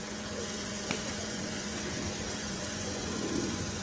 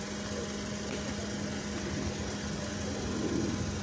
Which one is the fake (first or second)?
first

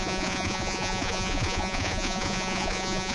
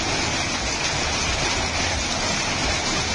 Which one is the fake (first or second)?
first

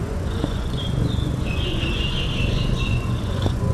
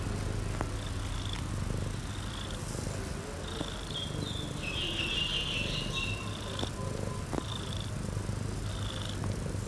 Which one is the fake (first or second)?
first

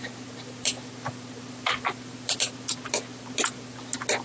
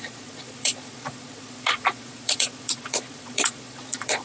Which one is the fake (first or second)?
second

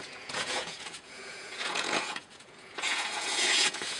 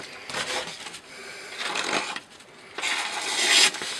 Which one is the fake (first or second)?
first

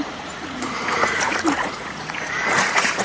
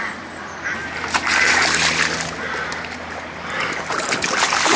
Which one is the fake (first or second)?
first